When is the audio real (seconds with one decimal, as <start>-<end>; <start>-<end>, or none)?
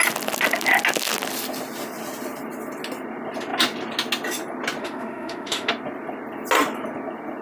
0.0-4.8; 5.7-7.4